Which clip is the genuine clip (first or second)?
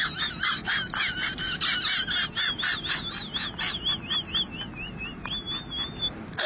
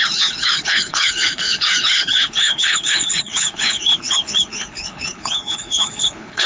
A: first